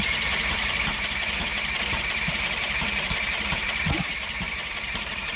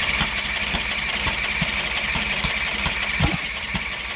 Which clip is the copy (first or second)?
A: first